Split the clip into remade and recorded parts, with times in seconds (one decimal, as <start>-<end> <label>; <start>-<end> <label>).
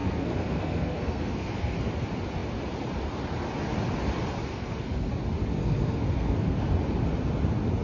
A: 0.0-1.9 remade; 1.9-4.5 recorded; 4.5-5.1 remade; 5.1-5.6 recorded; 5.6-6.6 remade; 6.6-7.8 recorded